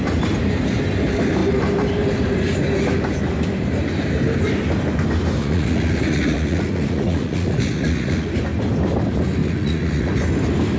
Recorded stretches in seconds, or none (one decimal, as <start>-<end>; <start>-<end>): 0.0-5.4; 8.3-9.4; 10.1-10.8